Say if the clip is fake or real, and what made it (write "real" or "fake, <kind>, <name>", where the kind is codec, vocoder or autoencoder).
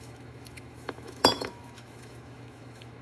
fake, autoencoder, DAC-VAE